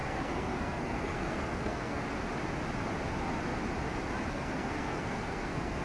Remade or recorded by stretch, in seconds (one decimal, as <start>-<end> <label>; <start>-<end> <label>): 0.0-2.0 remade; 2.0-4.3 recorded; 4.3-5.8 remade